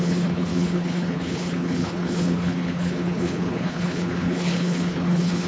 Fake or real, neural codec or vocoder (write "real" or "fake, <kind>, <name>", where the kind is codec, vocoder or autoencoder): fake, codec, HILCodec